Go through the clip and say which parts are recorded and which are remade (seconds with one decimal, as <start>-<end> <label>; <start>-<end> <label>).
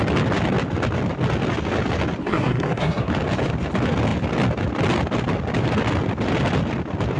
0.0-2.2 recorded; 2.2-3.1 remade; 3.1-7.2 recorded